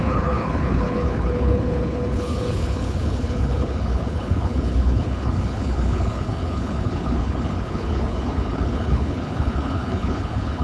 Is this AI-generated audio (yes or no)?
yes